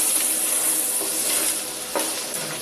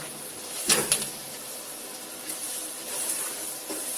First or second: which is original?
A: first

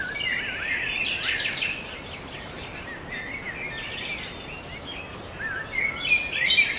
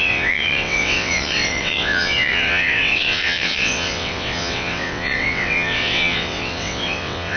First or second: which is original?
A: first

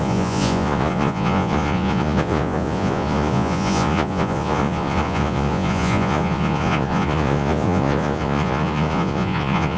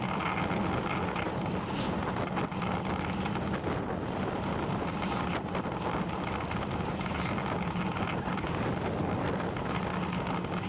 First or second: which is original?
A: second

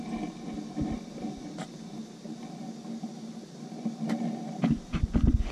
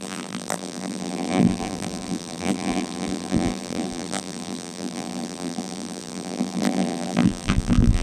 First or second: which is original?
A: first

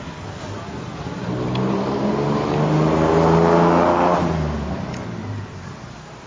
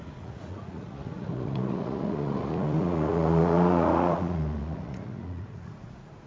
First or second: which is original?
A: first